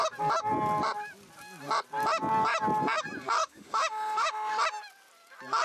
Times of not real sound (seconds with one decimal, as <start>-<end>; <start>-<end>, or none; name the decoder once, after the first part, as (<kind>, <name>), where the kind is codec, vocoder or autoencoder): 3.4-4.6 (autoencoder, DAC-VAE)